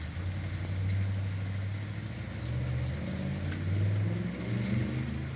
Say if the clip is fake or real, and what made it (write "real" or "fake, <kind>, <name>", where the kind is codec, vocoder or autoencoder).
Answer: real